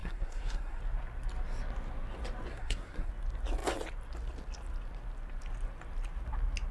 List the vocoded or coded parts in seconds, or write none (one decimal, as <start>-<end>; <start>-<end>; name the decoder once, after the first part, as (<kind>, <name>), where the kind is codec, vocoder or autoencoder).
0.0-0.8 (codec, SNAC); 2.5-3.1